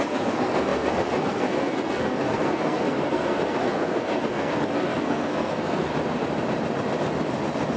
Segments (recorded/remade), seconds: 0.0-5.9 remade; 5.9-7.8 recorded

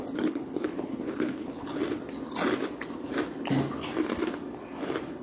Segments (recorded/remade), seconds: 0.0-1.8 remade; 1.8-5.2 recorded

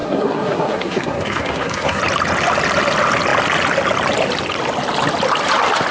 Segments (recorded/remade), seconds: 0.0-2.0 remade; 2.0-5.9 recorded

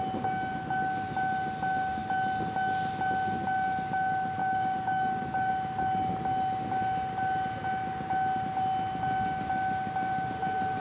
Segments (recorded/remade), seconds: 0.0-4.4 recorded; 4.4-5.5 remade; 5.5-10.8 recorded